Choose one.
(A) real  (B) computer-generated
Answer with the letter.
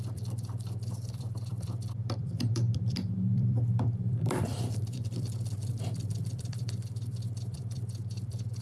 B